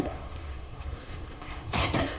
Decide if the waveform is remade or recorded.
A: remade